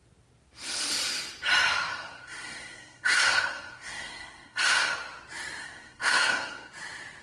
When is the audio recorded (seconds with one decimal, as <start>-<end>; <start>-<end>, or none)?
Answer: 0.0-1.9; 4.9-5.6; 6.7-7.2